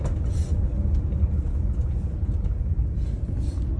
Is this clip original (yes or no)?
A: yes